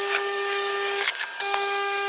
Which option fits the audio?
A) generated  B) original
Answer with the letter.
A